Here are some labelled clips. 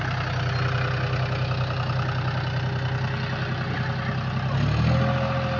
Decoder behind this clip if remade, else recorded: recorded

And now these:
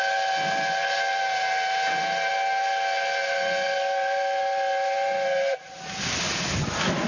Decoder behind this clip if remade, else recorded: recorded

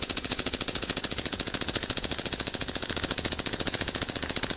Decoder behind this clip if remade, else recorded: remade, vocoder, Vocos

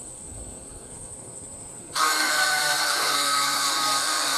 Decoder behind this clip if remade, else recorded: remade, codec, SNAC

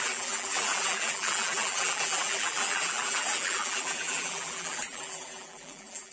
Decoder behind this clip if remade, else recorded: remade, vocoder, BigVGAN v2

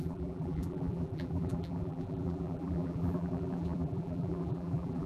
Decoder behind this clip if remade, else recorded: remade, vocoder, BigVGAN v2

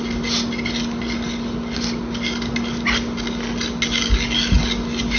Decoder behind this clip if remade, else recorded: recorded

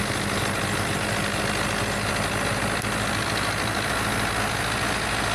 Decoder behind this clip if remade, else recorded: recorded